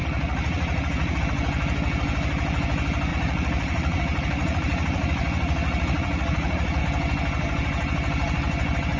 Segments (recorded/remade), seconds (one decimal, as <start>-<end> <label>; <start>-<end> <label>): 0.0-1.2 remade; 1.2-3.1 recorded; 3.1-6.8 remade; 6.8-9.0 recorded